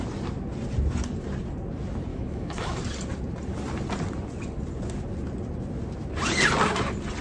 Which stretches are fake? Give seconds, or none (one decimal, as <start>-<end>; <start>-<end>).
2.1-2.8